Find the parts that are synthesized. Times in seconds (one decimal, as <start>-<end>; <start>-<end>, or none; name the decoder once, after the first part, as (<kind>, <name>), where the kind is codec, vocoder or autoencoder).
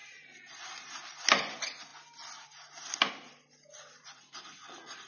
0.0-0.9 (vocoder, Vocos); 4.0-5.1